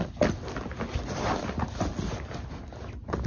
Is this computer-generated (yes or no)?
no